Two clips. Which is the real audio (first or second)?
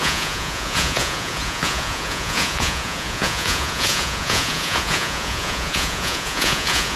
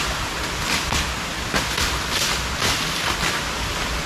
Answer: second